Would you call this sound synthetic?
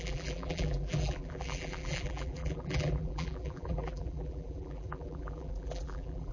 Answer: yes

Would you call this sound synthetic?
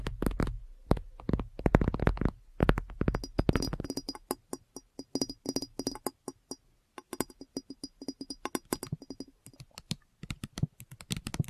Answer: no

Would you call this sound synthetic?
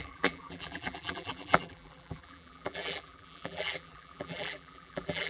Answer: yes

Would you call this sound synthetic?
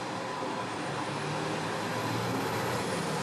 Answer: no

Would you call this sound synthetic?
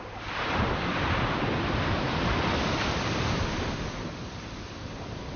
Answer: yes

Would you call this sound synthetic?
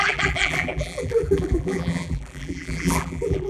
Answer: yes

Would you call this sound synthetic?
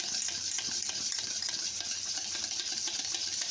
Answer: yes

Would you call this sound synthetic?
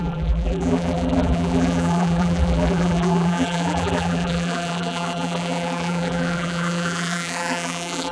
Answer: yes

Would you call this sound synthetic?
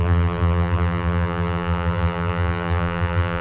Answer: yes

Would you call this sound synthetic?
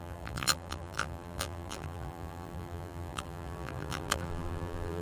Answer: yes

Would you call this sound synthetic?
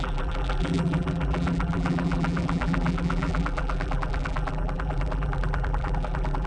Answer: yes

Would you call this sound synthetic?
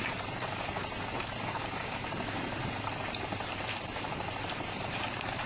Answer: yes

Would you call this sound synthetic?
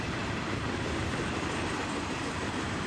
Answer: yes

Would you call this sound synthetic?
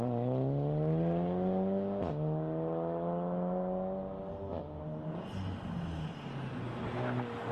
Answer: no